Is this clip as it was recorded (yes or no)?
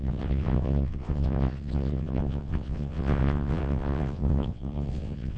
no